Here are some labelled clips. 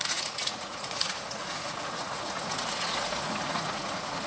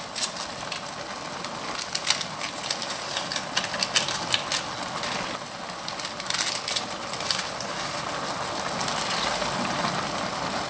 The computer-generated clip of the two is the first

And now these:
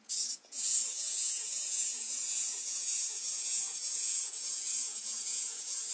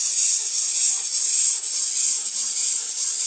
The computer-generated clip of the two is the first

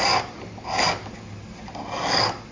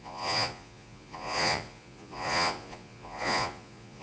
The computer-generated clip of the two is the second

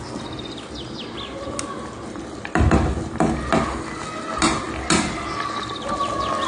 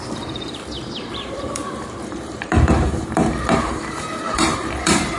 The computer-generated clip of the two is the second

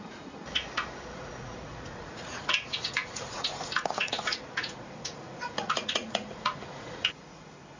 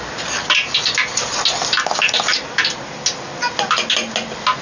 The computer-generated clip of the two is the first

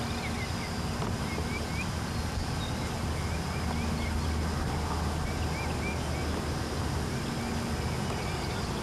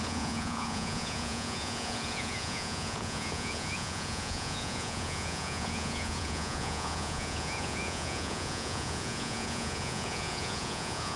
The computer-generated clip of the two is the second